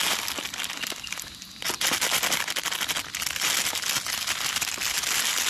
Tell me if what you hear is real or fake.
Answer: real